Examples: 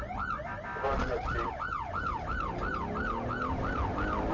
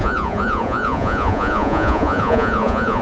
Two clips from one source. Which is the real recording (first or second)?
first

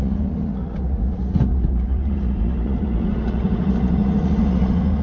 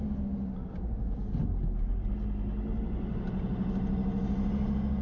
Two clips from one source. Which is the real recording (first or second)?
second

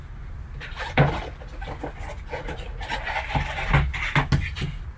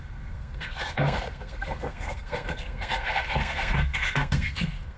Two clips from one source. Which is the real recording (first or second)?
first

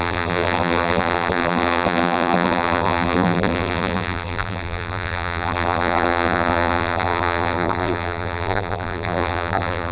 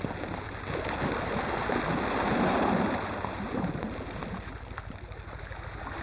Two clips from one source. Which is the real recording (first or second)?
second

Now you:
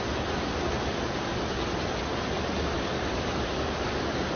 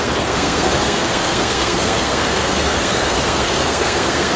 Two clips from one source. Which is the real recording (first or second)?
first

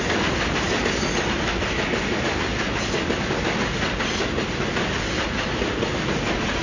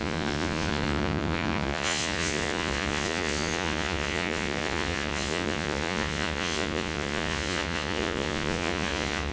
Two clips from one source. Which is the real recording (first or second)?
first